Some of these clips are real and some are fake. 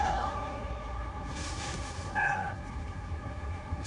fake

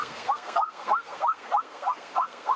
fake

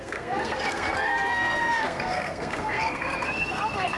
fake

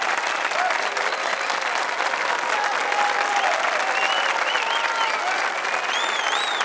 real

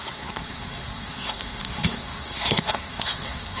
fake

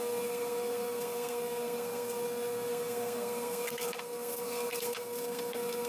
fake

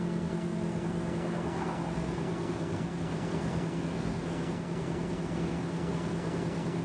fake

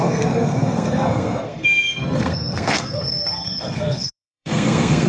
fake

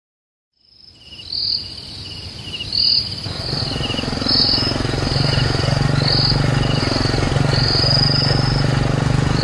real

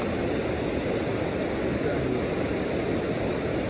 real